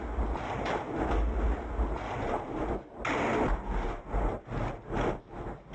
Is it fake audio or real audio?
real